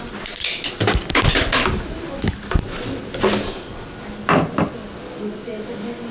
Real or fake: real